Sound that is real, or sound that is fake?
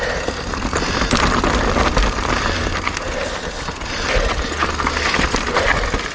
real